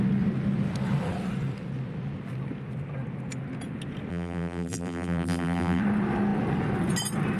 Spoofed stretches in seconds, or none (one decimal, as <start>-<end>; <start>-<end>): 4.1-5.8